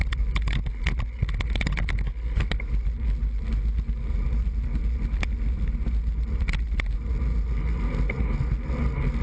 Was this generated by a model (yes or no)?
no